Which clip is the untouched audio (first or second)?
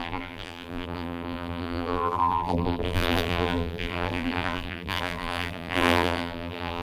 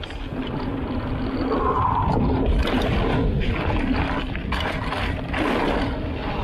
second